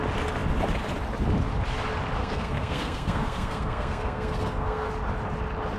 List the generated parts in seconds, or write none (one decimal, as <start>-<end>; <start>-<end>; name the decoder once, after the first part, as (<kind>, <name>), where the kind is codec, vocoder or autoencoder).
2.2-4.9 (codec, SNAC)